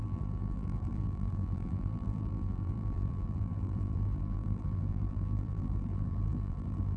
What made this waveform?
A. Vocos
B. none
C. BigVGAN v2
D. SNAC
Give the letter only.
C